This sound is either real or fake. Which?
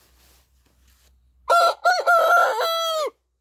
real